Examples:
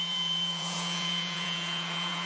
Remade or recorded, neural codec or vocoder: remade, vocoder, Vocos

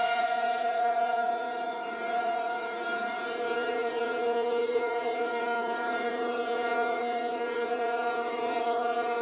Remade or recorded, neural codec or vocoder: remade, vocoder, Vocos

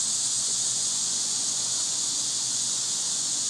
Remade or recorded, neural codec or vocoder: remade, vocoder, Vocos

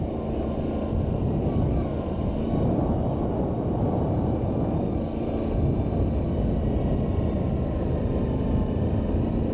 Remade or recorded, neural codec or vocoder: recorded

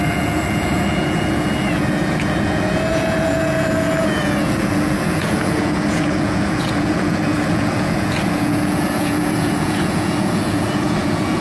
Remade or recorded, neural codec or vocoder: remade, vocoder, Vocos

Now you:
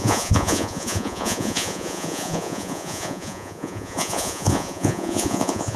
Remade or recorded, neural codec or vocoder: remade, vocoder, Vocos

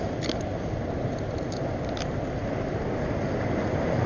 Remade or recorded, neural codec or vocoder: recorded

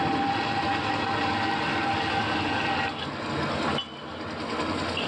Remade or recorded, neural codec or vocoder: recorded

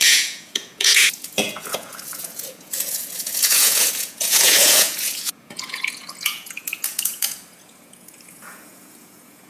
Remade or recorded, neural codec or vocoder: remade, vocoder, Vocos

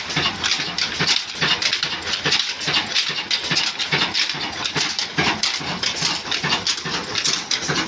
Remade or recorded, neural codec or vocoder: recorded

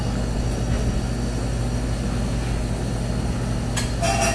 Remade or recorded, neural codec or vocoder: recorded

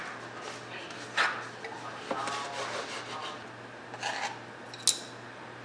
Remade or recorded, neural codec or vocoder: recorded